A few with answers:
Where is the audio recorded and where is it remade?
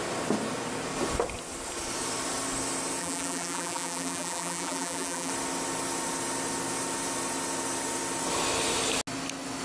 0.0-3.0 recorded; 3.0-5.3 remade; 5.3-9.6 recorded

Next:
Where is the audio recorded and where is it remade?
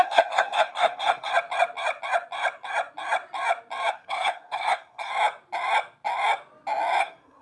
0.0-1.3 remade; 1.3-3.9 recorded; 3.9-5.1 remade; 5.1-7.0 recorded; 7.0-7.4 remade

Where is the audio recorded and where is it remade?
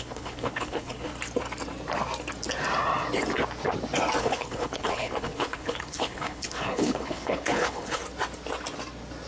0.0-1.1 remade; 1.1-4.2 recorded; 4.2-8.0 remade; 8.0-9.3 recorded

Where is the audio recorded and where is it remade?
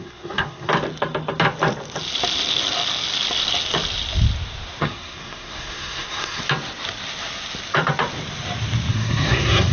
0.0-0.7 remade; 0.7-4.8 recorded; 4.8-6.4 remade; 6.4-8.9 recorded; 8.9-9.7 remade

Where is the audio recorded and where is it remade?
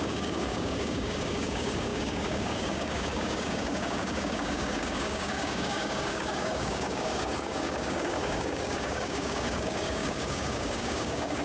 0.0-11.4 remade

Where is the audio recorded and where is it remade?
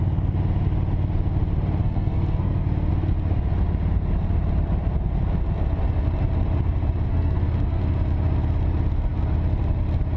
0.0-1.8 recorded; 1.8-2.9 remade; 2.9-7.1 recorded; 7.1-7.8 remade; 7.8-10.2 recorded